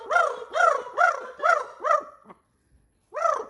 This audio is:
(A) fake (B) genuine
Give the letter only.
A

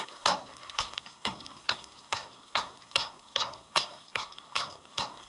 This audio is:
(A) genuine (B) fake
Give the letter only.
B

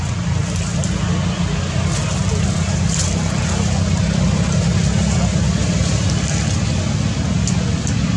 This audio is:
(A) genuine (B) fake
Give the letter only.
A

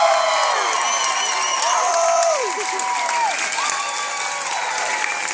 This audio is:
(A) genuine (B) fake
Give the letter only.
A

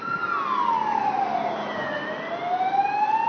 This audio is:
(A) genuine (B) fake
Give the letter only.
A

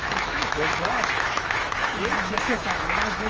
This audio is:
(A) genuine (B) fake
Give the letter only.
B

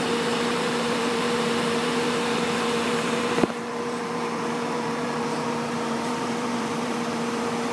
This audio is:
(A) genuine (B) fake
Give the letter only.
B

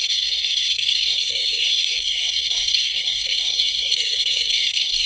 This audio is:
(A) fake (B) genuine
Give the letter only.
A